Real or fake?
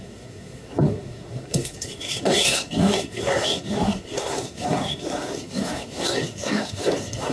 fake